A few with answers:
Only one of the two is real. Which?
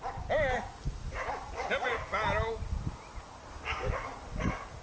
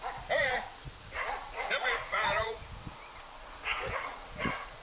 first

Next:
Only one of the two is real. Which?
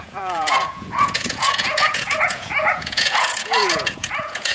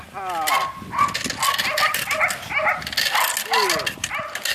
second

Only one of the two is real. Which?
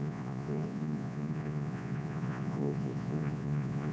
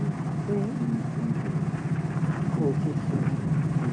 second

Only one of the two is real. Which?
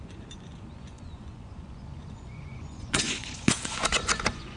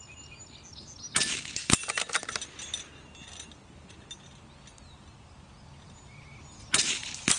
second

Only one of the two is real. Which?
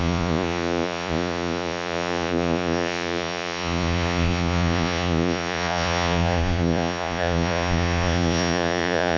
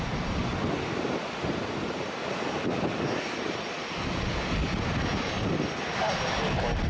second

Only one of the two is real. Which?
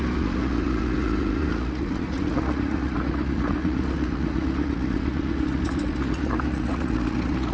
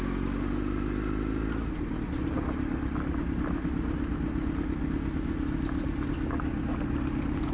second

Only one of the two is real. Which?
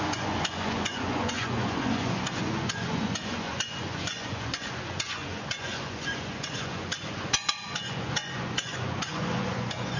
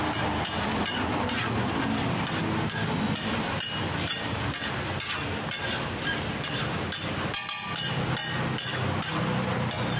second